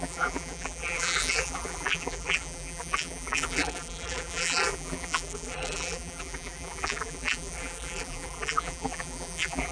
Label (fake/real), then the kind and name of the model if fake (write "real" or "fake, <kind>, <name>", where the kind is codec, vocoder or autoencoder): fake, vocoder, BigVGAN v2